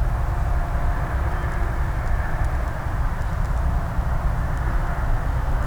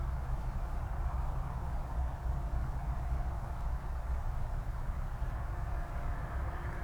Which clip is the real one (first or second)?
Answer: first